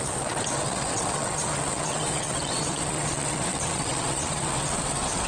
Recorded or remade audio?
remade